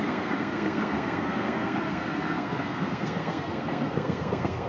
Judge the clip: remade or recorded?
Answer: remade